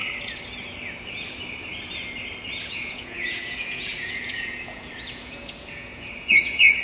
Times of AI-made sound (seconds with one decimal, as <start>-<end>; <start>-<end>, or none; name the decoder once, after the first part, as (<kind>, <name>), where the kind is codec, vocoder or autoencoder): 2.7-6.8 (vocoder, Vocos)